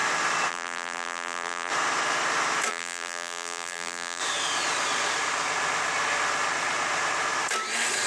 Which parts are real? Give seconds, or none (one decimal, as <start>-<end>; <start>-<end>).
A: 0.0-0.5; 1.7-2.7; 4.2-8.1